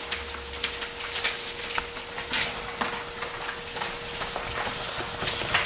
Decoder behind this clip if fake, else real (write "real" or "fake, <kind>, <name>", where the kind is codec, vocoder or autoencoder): real